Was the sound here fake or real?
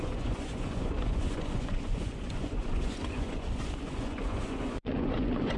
fake